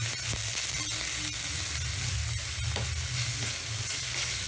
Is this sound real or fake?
real